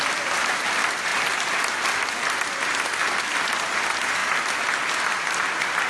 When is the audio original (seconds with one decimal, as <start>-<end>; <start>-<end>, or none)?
0.0-5.9